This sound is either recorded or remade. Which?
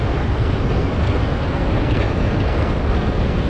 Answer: remade